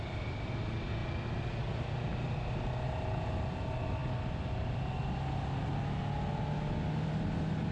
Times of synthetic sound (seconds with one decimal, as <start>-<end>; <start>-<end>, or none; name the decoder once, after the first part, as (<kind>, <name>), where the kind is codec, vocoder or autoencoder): none